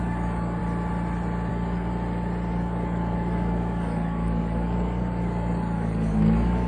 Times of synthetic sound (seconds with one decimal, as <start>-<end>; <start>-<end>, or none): 0.0-0.6; 1.5-1.9; 2.5-6.7